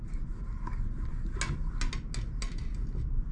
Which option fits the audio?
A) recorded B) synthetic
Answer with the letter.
A